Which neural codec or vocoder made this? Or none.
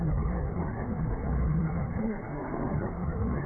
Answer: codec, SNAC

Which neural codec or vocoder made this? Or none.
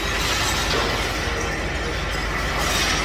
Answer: none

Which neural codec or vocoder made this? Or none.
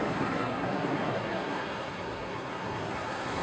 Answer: codec, SNAC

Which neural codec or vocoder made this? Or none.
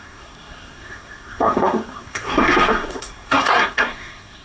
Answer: codec, SNAC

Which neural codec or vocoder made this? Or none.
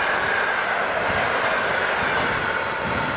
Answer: none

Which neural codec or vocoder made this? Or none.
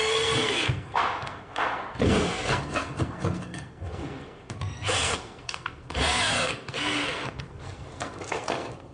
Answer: codec, SNAC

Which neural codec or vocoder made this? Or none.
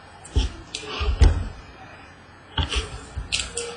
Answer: none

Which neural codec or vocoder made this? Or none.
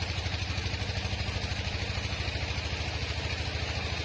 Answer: none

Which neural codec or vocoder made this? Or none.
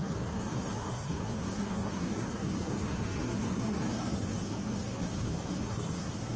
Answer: codec, SNAC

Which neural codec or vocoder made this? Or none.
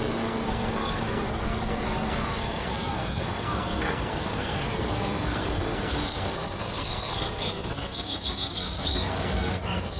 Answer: codec, SNAC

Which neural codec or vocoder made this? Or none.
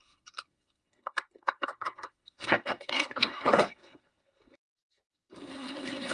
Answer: codec, SNAC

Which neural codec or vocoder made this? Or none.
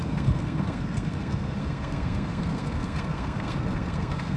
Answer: codec, SNAC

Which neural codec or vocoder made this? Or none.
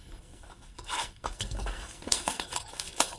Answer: codec, SNAC